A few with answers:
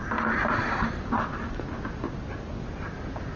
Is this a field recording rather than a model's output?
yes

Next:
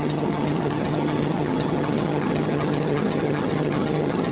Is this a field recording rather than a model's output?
no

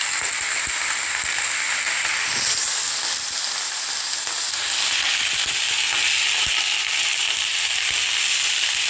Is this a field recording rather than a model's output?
yes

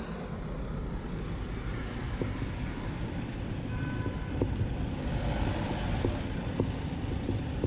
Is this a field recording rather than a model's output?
yes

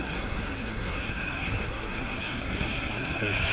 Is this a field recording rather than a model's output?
no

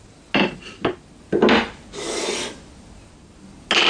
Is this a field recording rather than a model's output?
yes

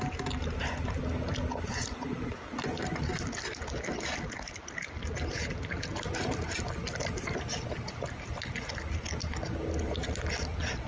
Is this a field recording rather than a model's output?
yes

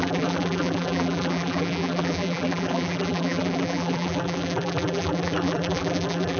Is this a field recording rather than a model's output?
no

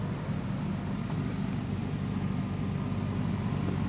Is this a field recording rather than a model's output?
yes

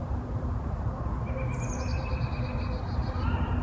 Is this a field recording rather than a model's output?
yes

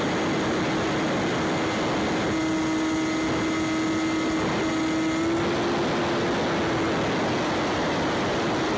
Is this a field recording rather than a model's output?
yes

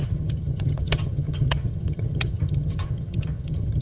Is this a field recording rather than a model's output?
no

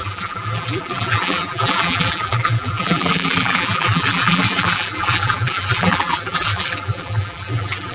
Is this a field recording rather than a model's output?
no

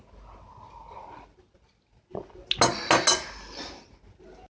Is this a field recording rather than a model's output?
yes